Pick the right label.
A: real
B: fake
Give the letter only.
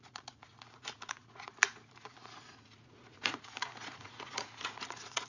B